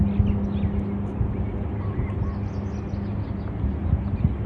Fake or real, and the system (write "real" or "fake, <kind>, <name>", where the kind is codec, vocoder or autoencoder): real